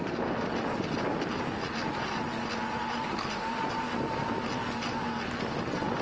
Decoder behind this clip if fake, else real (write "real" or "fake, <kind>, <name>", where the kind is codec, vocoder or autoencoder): real